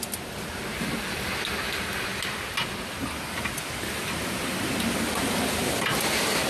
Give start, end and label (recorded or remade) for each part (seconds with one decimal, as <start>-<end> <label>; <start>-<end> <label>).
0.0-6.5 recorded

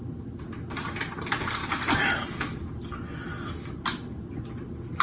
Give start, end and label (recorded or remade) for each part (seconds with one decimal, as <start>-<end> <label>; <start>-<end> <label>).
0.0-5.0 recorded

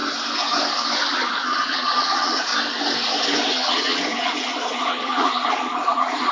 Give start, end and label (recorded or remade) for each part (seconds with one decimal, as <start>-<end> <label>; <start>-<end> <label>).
0.0-1.1 recorded; 1.1-2.5 remade; 2.5-3.5 recorded; 3.5-6.3 remade

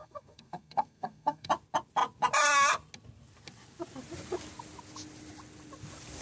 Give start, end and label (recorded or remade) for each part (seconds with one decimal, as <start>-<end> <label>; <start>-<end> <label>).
0.0-1.5 remade; 1.5-6.2 recorded

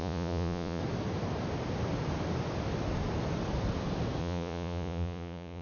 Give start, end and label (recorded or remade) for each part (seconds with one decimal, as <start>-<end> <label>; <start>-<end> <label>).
0.0-0.8 remade; 0.8-4.2 recorded; 4.2-5.6 remade

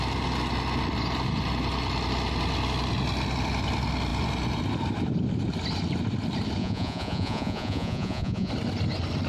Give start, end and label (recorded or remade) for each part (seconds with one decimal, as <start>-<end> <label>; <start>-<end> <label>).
0.0-6.6 recorded; 6.6-8.5 remade; 8.5-9.3 recorded

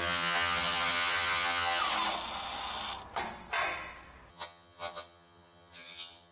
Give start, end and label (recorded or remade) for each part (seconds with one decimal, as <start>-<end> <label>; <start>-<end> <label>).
0.0-1.8 remade; 1.8-4.3 recorded; 4.3-6.3 remade

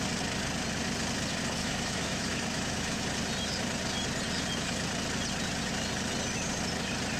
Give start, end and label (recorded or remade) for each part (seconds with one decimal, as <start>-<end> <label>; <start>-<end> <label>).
0.0-1.6 recorded; 1.6-3.0 remade; 3.0-7.2 recorded